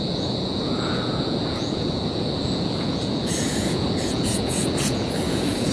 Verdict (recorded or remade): remade